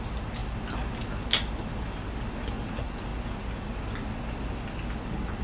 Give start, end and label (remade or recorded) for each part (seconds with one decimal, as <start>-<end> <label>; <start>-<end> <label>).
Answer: 0.0-5.4 recorded